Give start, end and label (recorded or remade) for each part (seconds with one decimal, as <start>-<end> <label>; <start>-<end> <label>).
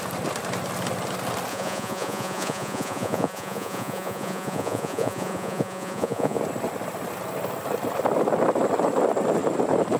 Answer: 0.0-1.5 recorded; 1.5-6.4 remade; 6.4-10.0 recorded